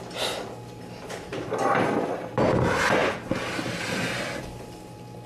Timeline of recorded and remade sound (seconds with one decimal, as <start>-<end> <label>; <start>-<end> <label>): 0.0-5.3 recorded